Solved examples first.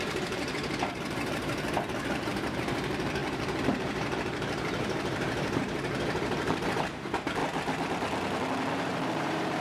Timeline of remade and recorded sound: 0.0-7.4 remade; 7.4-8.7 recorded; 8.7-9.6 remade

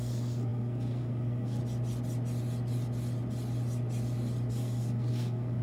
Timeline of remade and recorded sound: 0.0-1.6 remade; 1.6-4.5 recorded; 4.5-5.6 remade

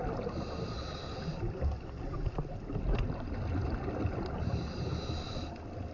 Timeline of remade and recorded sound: 0.0-5.9 recorded

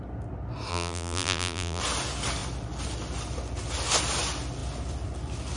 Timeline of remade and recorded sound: 0.0-0.7 recorded; 0.7-1.8 remade; 1.8-5.6 recorded

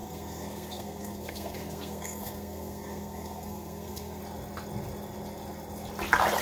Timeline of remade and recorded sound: 0.0-4.2 remade; 4.2-6.4 recorded

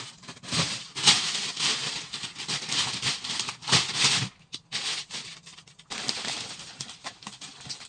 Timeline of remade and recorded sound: 0.0-7.9 recorded

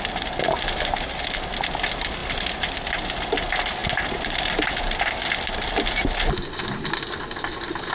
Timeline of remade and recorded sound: 0.0-2.2 recorded; 2.2-3.0 remade; 3.0-7.9 recorded

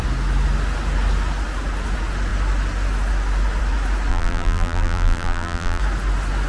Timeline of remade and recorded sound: 0.0-4.1 recorded; 4.1-5.8 remade; 5.8-6.5 recorded